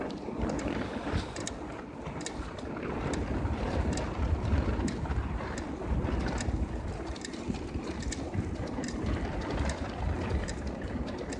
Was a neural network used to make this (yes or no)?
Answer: yes